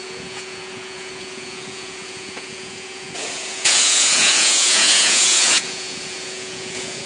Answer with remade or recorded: remade